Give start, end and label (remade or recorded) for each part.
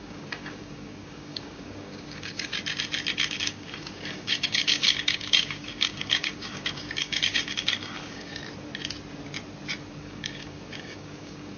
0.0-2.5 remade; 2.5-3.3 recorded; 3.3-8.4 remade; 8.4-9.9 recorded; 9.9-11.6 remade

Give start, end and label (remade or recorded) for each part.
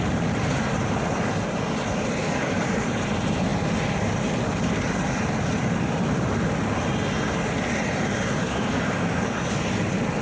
0.0-2.2 recorded; 2.2-3.0 remade; 3.0-8.4 recorded; 8.4-9.5 remade; 9.5-10.2 recorded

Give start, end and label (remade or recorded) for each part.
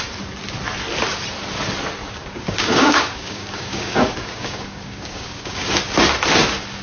0.0-2.0 recorded; 2.0-5.7 remade; 5.7-6.8 recorded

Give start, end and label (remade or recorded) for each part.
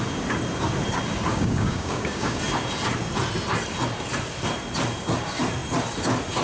0.0-1.3 recorded; 1.3-2.4 remade; 2.4-6.4 recorded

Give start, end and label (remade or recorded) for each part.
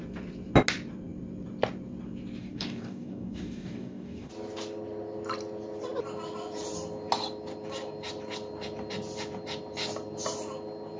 0.0-2.4 recorded; 2.4-4.3 remade; 4.3-11.0 recorded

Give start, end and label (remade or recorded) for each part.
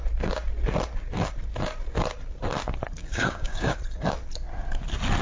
0.0-3.0 recorded; 3.0-3.8 remade; 3.8-5.2 recorded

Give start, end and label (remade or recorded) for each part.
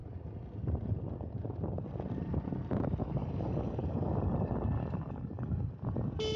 0.0-3.0 recorded; 3.0-4.2 remade; 4.2-4.8 recorded; 4.8-5.7 remade; 5.7-6.4 recorded